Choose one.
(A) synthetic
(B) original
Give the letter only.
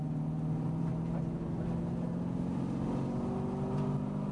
B